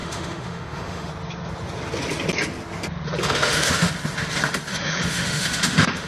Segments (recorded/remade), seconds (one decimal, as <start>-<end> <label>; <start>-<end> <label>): 0.0-1.1 remade; 1.1-3.2 recorded; 3.2-3.9 remade; 3.9-4.7 recorded; 4.7-6.1 remade